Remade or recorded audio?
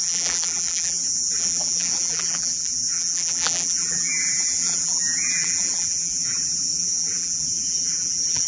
remade